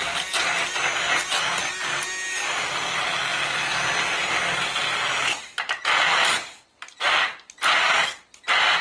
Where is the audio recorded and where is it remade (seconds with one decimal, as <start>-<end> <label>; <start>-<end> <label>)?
0.0-8.8 recorded